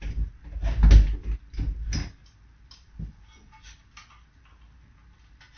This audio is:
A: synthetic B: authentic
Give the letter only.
B